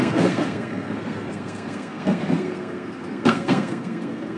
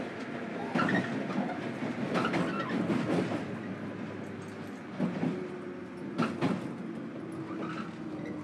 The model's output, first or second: first